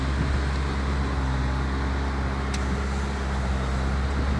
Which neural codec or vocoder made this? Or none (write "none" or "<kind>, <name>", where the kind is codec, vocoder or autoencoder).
none